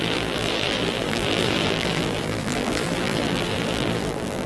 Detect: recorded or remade remade